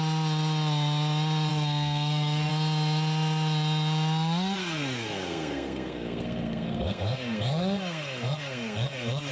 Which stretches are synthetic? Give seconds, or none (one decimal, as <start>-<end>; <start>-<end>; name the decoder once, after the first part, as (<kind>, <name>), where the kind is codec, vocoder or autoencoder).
1.5-2.5 (codec, SNAC); 4.6-9.3